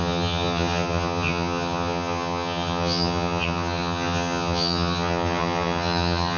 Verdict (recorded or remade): remade